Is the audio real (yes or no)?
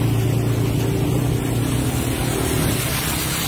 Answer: yes